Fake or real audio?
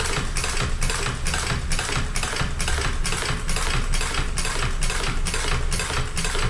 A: real